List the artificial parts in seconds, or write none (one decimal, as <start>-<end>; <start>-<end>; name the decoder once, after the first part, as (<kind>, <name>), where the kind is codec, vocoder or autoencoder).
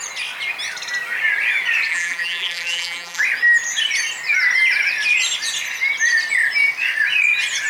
1.9-3.2 (vocoder, BigVGAN v2)